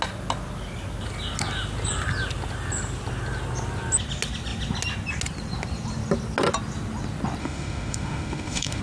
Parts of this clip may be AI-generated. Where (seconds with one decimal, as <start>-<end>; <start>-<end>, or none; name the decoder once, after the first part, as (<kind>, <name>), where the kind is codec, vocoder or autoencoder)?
7.4-8.8 (autoencoder, DAC-VAE)